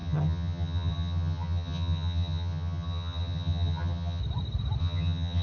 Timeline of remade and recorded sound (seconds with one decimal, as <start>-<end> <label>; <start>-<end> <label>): 0.0-4.2 remade; 4.2-4.8 recorded; 4.8-5.4 remade